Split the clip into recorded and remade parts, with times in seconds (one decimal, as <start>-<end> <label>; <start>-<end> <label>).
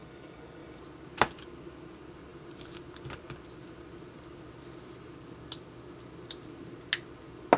0.0-0.8 remade; 0.8-7.6 recorded